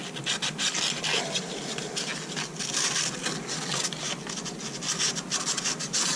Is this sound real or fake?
real